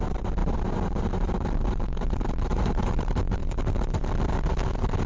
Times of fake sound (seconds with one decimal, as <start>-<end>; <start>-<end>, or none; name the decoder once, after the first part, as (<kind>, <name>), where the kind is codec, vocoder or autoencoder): 0.4-1.3 (vocoder, BigVGAN v2); 2.5-4.1